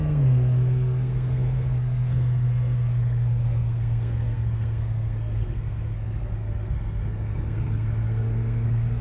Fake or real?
fake